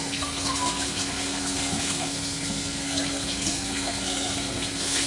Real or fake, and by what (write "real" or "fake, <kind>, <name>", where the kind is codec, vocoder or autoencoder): fake, codec, SNAC